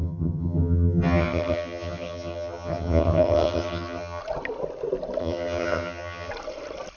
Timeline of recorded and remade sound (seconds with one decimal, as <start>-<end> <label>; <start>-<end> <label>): 0.0-4.2 remade; 4.2-5.2 recorded; 5.2-6.3 remade; 6.3-7.0 recorded